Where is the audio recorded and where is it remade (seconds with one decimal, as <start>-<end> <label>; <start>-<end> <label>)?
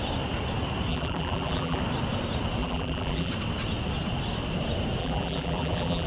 0.0-0.9 recorded; 0.9-1.8 remade; 1.8-2.6 recorded; 2.6-3.3 remade; 3.3-5.0 recorded; 5.0-6.1 remade